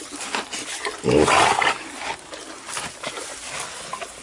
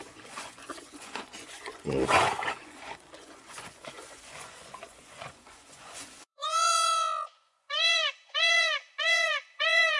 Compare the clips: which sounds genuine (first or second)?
first